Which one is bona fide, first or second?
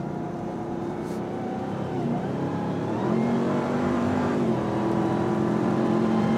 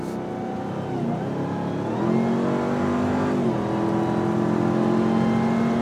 second